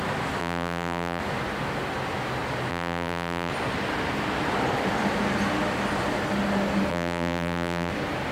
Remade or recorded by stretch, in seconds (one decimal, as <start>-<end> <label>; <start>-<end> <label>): 0.0-0.4 recorded; 0.4-1.2 remade; 1.2-2.7 recorded; 2.7-3.5 remade; 3.5-6.9 recorded; 6.9-7.9 remade; 7.9-8.3 recorded